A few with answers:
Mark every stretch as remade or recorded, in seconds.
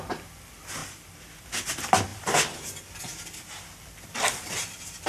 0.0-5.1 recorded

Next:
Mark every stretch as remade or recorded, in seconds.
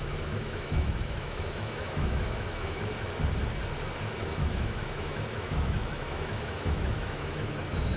0.0-2.9 remade; 2.9-4.5 recorded; 4.5-8.0 remade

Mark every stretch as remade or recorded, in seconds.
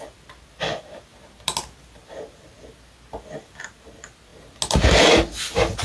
0.0-5.8 recorded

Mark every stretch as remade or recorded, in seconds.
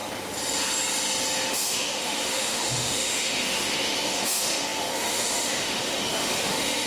0.0-1.5 recorded; 1.5-6.9 remade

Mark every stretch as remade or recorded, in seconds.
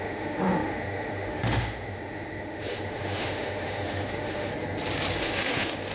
0.0-4.5 remade; 4.5-5.2 recorded; 5.2-5.9 remade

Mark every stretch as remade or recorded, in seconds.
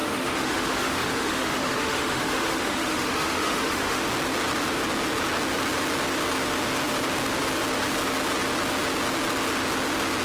0.0-4.0 remade; 4.0-10.2 recorded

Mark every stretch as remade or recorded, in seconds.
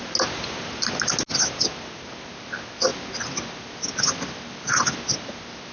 0.0-5.7 recorded